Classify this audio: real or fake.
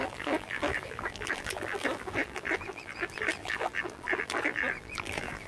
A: fake